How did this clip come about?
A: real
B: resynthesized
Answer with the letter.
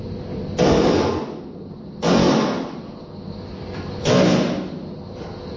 A